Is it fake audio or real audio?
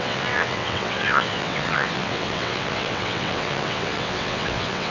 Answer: fake